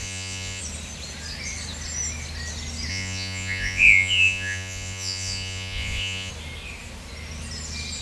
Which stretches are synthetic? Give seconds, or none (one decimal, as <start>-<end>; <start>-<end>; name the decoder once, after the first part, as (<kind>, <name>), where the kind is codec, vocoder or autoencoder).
0.0-0.6 (vocoder, Vocos); 2.9-6.3